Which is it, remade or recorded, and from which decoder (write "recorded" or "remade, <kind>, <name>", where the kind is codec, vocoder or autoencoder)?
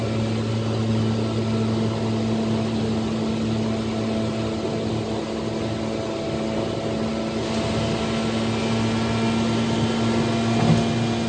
recorded